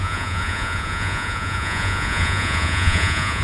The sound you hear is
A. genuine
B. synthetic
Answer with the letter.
B